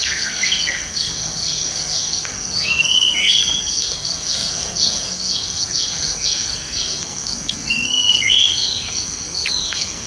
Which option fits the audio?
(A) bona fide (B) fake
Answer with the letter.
B